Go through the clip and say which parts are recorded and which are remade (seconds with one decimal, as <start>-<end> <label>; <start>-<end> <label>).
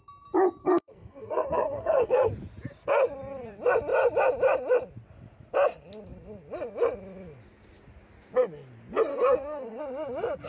0.0-0.6 recorded; 0.6-2.3 remade; 2.3-9.1 recorded; 9.1-9.8 remade; 9.8-10.5 recorded